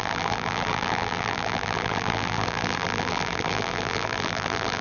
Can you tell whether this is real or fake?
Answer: fake